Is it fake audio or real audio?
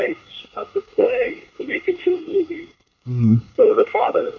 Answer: fake